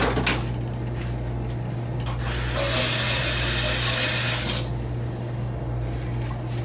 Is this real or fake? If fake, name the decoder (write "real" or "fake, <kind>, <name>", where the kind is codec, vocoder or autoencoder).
real